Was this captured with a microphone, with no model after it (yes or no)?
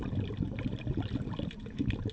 yes